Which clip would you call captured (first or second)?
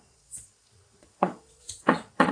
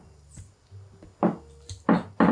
second